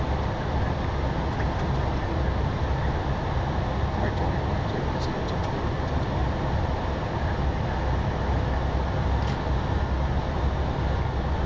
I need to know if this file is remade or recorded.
recorded